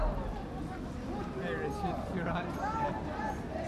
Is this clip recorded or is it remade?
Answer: recorded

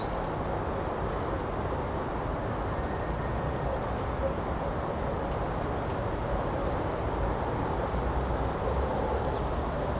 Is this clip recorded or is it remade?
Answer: recorded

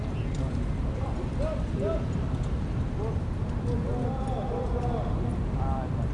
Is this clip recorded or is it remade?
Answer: recorded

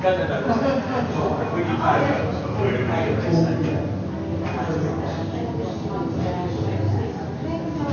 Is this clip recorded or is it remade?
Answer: recorded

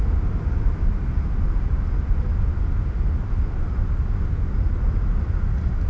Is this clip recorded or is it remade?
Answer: recorded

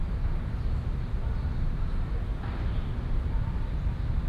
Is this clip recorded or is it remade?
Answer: recorded